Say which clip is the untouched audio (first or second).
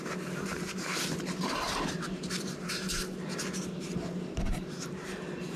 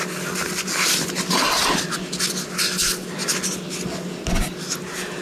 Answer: second